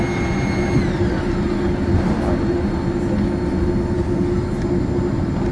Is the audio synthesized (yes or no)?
no